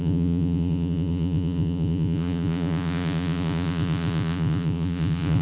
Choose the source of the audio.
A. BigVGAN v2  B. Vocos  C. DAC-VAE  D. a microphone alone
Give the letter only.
B